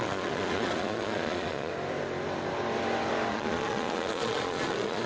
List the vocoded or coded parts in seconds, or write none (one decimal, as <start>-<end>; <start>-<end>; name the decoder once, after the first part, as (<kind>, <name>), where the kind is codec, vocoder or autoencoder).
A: 0.0-1.7 (vocoder, Vocos); 3.3-5.1